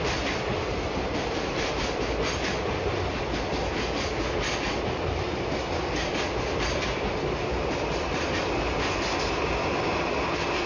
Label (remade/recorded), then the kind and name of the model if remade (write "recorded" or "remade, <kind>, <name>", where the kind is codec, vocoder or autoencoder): recorded